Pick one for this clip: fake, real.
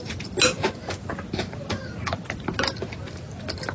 real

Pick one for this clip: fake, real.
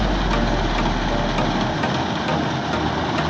real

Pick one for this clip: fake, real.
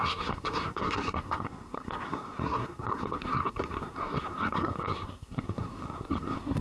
fake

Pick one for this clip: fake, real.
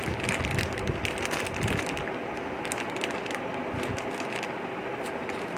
real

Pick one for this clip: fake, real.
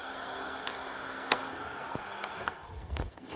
fake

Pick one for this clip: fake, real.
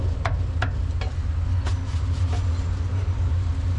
real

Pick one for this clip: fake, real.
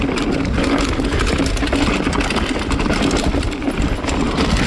real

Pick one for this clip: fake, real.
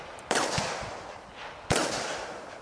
real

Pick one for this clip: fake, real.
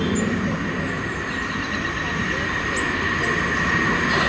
real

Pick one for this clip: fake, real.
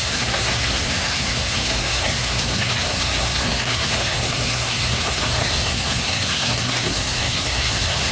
fake